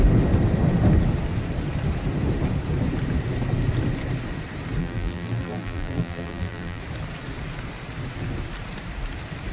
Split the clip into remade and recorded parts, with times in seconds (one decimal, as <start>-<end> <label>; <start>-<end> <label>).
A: 0.0-4.8 recorded; 4.8-6.8 remade; 6.8-9.5 recorded